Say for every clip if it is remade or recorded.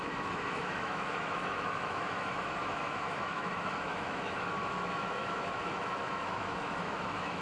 remade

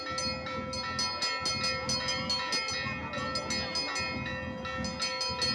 recorded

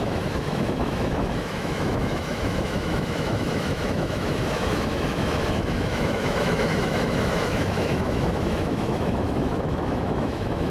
remade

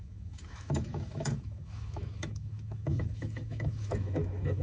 remade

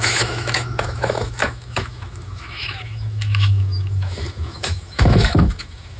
remade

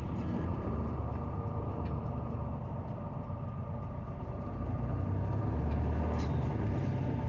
recorded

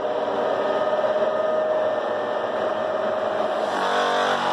recorded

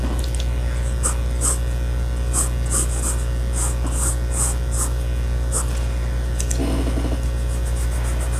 recorded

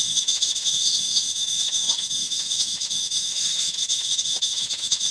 remade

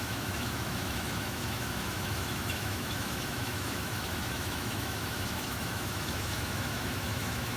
remade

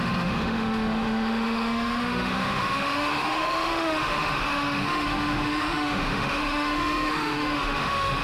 remade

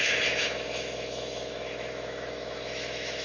remade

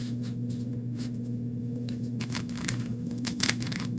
remade